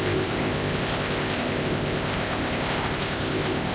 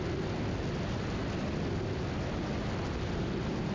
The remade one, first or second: first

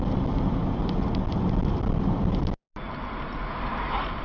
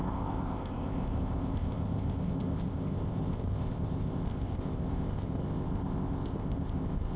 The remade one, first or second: second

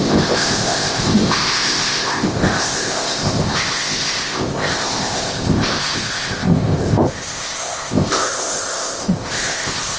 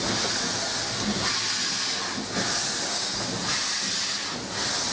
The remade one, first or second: first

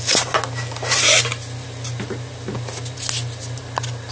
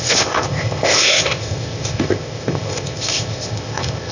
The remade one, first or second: second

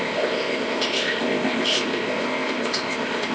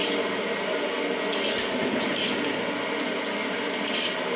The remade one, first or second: first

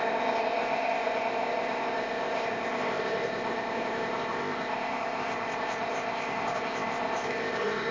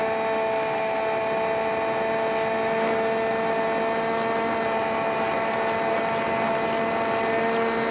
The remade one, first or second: first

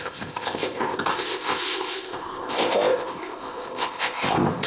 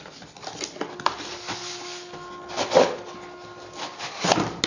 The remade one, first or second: first